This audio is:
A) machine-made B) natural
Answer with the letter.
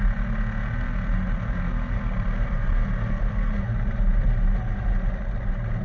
B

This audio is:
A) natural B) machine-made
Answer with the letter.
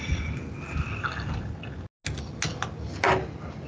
A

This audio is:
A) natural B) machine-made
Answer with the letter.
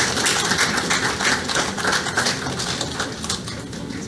A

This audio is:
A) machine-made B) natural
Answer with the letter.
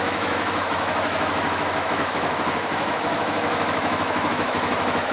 A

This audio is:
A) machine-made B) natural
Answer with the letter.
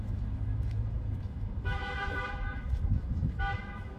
A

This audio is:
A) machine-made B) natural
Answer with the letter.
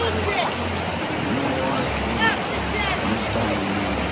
B